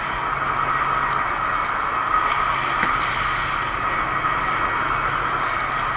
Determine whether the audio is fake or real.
real